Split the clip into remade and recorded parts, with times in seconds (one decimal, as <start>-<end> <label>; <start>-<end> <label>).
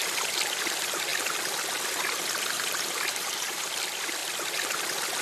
0.0-1.1 recorded; 1.1-3.6 remade; 3.6-5.2 recorded